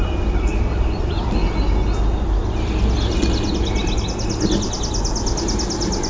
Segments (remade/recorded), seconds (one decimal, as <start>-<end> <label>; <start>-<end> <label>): 0.0-6.1 recorded

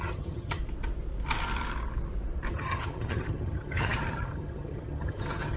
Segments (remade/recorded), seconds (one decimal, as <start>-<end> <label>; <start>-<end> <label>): 0.0-0.6 remade; 0.6-2.5 recorded; 2.5-5.6 remade

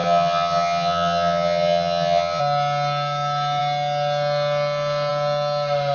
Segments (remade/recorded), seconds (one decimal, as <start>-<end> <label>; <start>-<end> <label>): 0.0-2.4 remade; 2.4-5.9 recorded

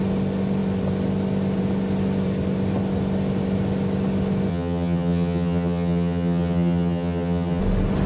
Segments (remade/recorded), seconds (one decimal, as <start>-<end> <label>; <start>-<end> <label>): 0.0-4.5 recorded; 4.5-7.6 remade; 7.6-8.1 recorded

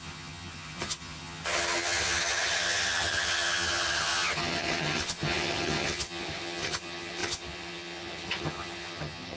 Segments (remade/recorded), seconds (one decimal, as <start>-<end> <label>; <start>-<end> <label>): 0.0-9.4 remade

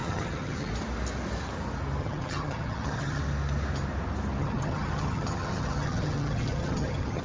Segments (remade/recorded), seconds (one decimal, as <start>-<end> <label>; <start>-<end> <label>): 0.0-0.7 remade; 0.7-2.0 recorded; 2.0-3.2 remade; 3.2-4.4 recorded; 4.4-7.2 remade

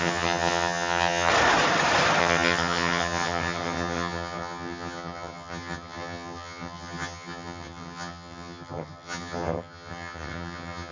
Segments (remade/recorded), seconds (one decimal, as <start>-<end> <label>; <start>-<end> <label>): 0.0-1.3 remade; 1.3-2.2 recorded; 2.2-10.9 remade

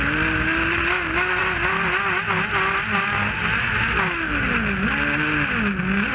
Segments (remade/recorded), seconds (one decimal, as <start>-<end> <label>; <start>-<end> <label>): 0.0-6.1 recorded